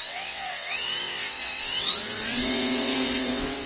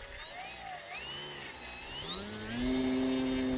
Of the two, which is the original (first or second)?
second